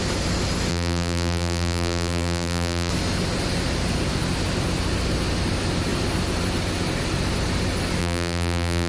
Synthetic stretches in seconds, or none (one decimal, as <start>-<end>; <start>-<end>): 0.7-2.9; 8.0-8.9

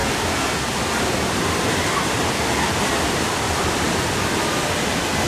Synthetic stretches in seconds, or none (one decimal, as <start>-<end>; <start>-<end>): none

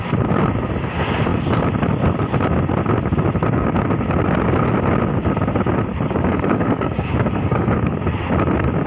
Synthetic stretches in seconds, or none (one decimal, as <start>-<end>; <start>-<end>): 5.9-8.0